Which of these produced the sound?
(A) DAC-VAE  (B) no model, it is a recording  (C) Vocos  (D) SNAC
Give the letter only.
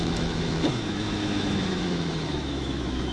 A